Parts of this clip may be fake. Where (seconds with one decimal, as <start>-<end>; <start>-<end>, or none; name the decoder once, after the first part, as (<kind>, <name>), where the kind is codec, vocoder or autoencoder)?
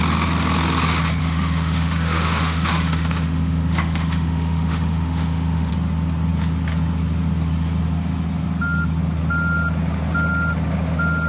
1.2-5.7 (autoencoder, DAC-VAE)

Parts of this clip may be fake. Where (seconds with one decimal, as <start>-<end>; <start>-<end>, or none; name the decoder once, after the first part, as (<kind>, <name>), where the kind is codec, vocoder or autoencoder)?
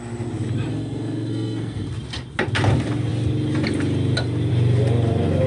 0.7-1.9 (codec, SNAC)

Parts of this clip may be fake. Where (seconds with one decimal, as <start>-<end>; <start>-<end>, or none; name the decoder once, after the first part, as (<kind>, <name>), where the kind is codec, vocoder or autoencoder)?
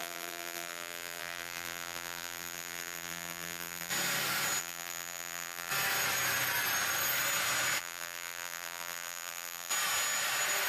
0.0-3.9 (vocoder, BigVGAN v2); 4.6-5.7; 7.8-9.7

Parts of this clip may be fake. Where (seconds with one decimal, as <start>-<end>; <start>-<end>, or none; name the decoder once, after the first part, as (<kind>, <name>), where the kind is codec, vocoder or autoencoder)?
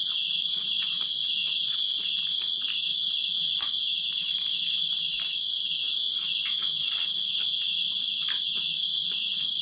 1.4-2.1 (vocoder, BigVGAN v2); 4.8-5.7; 6.6-7.3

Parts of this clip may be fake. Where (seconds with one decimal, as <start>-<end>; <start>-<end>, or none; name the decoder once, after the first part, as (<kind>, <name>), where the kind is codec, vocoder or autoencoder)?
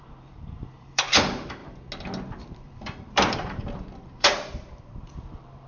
0.0-1.6 (vocoder, BigVGAN v2); 2.4-5.7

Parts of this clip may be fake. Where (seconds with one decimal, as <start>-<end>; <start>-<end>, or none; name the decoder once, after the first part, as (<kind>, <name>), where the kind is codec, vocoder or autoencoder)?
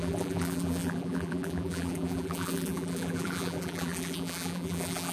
0.0-5.1 (vocoder, BigVGAN v2)